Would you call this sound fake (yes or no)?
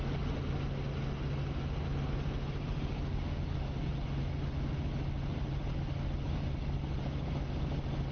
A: no